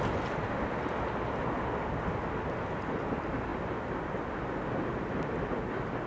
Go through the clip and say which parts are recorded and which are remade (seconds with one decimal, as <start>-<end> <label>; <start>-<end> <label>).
0.0-6.1 recorded